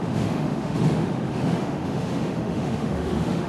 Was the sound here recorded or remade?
remade